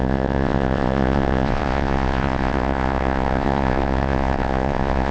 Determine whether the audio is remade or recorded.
remade